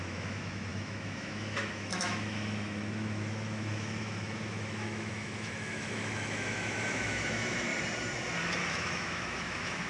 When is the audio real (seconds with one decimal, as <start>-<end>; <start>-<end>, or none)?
7.7-8.7